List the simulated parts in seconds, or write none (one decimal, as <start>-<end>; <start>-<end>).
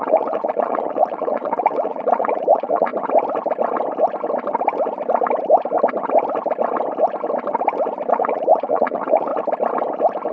0.0-2.9; 8.1-9.3